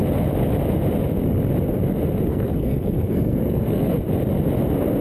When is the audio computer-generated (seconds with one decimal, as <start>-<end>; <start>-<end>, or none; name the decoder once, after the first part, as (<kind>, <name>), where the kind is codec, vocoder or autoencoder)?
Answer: 2.3-4.0 (codec, SNAC)